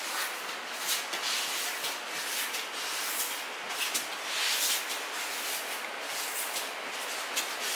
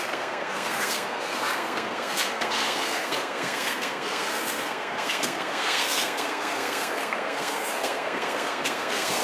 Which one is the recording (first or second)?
first